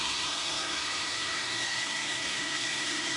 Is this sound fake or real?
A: fake